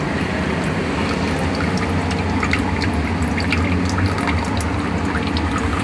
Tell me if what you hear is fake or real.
real